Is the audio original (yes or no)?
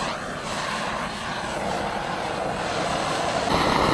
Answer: yes